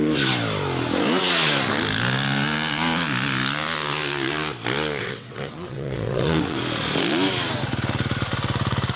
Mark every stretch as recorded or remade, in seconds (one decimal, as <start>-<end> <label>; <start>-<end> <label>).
0.0-5.0 recorded; 5.0-6.6 remade; 6.6-9.0 recorded